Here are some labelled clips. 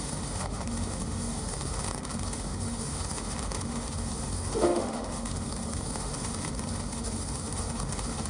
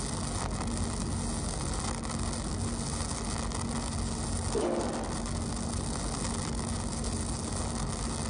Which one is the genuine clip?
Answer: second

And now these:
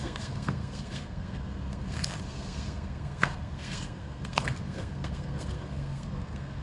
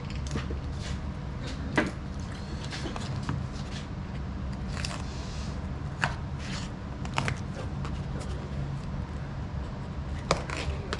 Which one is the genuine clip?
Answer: second